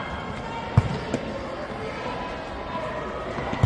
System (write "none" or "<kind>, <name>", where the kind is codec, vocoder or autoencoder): none